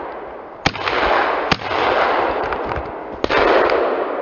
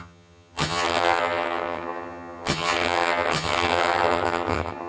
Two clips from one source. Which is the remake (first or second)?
second